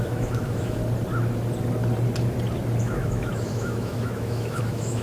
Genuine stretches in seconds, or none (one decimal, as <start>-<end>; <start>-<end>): 0.8-2.8